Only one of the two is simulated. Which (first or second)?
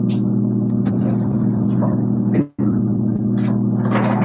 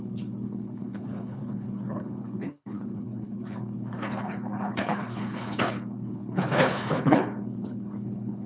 second